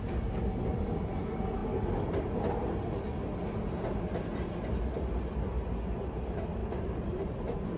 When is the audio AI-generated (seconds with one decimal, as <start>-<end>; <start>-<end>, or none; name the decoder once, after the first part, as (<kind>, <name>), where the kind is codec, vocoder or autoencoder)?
6.6-7.2 (vocoder, BigVGAN v2)